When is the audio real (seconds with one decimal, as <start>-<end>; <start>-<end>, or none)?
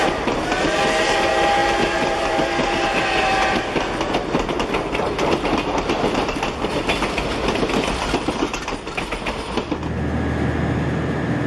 0.0-1.6; 2.2-11.5